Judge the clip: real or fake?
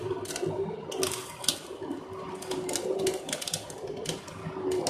real